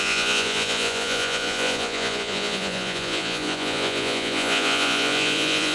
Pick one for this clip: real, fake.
fake